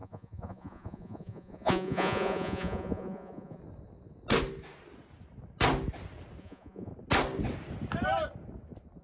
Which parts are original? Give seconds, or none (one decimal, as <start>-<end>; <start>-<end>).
3.6-6.4; 6.9-9.0